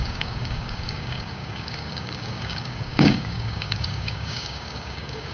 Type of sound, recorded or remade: remade